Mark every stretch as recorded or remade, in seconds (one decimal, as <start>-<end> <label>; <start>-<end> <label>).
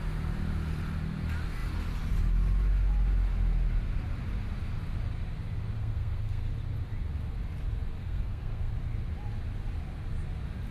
0.0-5.8 recorded; 5.8-6.5 remade; 6.5-8.0 recorded; 8.0-8.7 remade; 8.7-10.7 recorded